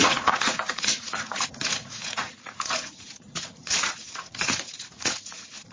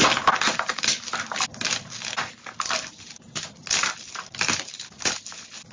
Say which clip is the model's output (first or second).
first